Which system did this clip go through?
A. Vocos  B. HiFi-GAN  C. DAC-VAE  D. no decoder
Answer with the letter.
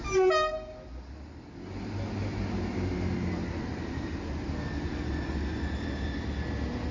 D